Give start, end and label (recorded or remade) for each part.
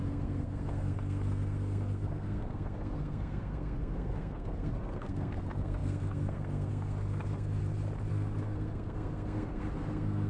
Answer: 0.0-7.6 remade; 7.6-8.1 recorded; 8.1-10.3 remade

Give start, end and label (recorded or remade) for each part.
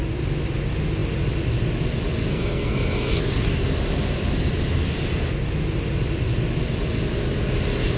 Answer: 0.0-2.3 recorded; 2.3-3.2 remade; 3.2-8.0 recorded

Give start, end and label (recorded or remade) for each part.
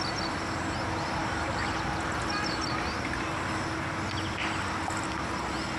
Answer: 0.0-5.8 recorded